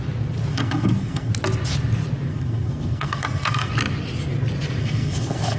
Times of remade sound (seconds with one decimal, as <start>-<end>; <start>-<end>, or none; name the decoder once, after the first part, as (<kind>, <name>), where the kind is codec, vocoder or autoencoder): 0.5-1.3 (codec, SNAC); 2.3-3.7; 4.8-5.6